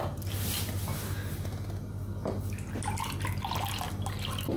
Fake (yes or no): no